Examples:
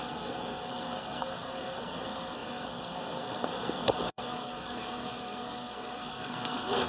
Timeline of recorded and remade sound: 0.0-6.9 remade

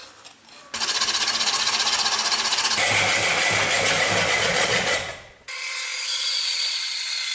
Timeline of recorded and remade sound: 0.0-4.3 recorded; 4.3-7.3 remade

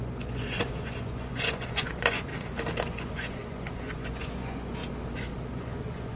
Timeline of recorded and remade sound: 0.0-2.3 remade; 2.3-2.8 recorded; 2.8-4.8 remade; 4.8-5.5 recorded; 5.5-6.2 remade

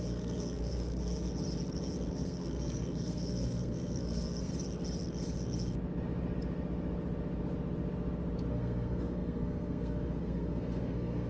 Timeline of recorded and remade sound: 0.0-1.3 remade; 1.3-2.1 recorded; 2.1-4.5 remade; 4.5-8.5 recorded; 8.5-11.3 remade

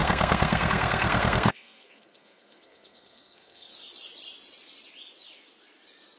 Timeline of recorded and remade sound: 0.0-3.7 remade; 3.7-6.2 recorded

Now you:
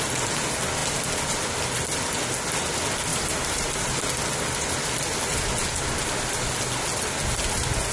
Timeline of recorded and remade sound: 0.0-3.1 recorded; 3.1-4.0 remade; 4.0-7.9 recorded

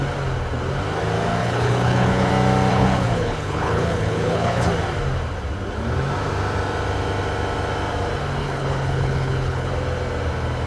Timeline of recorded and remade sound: 0.0-1.4 recorded; 1.4-2.3 remade; 2.3-2.7 recorded; 2.7-4.7 remade; 4.7-8.4 recorded; 8.4-9.7 remade; 9.7-10.7 recorded